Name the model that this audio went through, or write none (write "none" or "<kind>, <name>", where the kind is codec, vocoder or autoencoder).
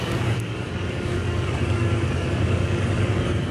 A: codec, DAC